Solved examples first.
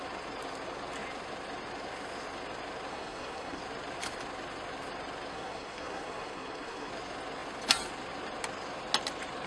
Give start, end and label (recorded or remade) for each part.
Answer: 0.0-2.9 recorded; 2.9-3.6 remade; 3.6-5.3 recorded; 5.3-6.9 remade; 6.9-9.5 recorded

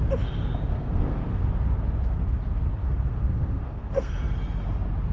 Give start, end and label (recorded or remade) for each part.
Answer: 0.0-0.7 recorded; 0.7-1.4 remade; 1.4-2.8 recorded; 2.8-4.1 remade; 4.1-5.1 recorded

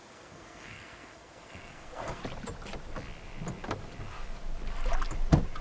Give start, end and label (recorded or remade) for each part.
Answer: 0.0-2.2 remade; 2.2-5.6 recorded

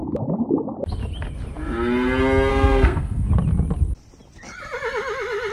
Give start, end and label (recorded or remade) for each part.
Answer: 0.0-2.5 recorded; 2.5-3.3 remade; 3.3-5.5 recorded

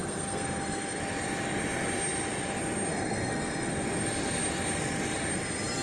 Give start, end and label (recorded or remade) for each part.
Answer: 0.0-1.0 remade; 1.0-2.9 recorded; 2.9-3.7 remade; 3.7-5.8 recorded

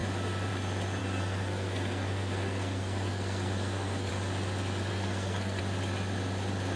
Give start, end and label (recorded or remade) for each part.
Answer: 0.0-1.0 recorded; 1.0-4.1 remade; 4.1-4.9 recorded; 4.9-5.6 remade; 5.6-6.8 recorded

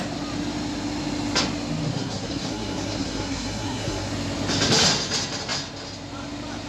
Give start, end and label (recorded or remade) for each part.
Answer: 0.0-1.9 recorded; 1.9-4.1 remade; 4.1-6.7 recorded